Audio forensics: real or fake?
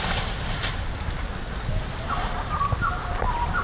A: real